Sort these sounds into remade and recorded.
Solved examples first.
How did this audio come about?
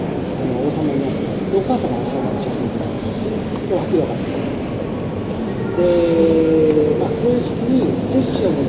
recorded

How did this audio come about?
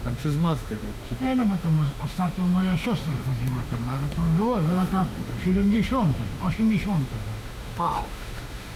remade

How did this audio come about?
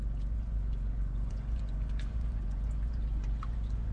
remade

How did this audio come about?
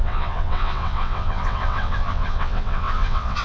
remade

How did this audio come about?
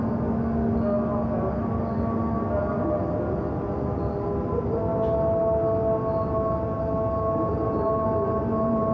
recorded